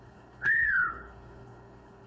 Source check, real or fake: fake